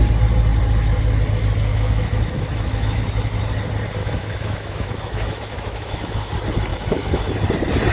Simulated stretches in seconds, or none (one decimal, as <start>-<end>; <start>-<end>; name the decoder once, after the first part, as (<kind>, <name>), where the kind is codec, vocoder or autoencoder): 1.7-3.0 (autoencoder, DAC-VAE); 4.0-6.3; 6.7-7.3